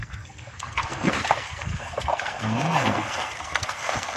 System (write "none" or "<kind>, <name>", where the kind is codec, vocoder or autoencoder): codec, SNAC